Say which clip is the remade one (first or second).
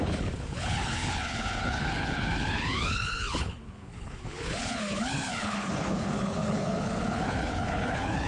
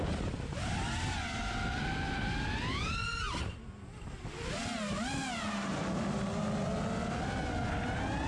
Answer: first